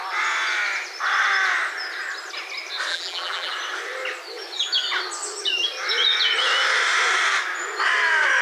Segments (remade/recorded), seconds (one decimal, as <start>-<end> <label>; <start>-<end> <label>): 0.0-2.9 recorded; 2.9-3.5 remade; 3.5-8.4 recorded